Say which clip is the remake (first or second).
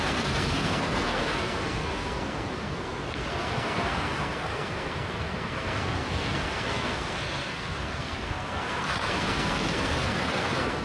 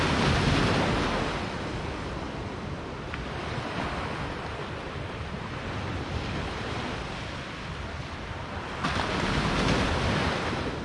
first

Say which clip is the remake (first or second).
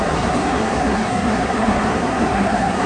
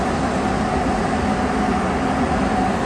first